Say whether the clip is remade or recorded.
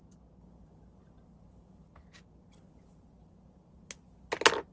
recorded